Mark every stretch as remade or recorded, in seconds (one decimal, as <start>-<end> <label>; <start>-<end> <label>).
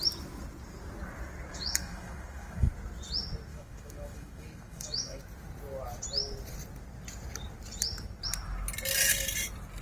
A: 0.0-1.5 recorded; 1.5-2.7 remade; 2.7-3.5 recorded; 3.5-5.2 remade; 5.2-9.8 recorded